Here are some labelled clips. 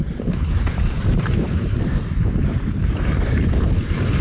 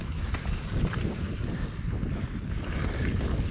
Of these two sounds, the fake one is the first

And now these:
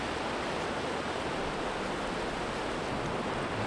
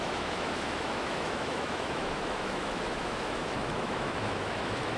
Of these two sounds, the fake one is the second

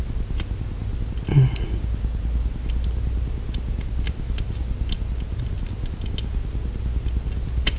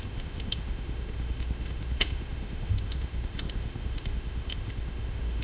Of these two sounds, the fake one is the second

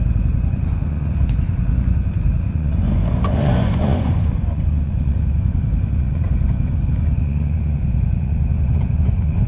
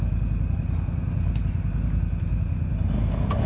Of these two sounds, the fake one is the first